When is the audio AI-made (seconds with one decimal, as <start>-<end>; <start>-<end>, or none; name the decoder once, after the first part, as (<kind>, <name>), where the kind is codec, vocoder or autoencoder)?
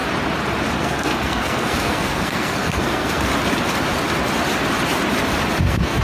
0.8-3.3 (codec, SNAC); 5.6-6.0